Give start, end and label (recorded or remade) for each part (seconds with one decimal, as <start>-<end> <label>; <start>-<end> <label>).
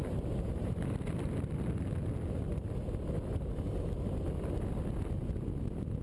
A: 0.0-1.3 remade; 1.3-6.0 recorded